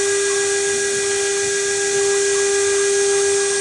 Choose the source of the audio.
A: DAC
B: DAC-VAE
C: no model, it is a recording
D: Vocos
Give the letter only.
C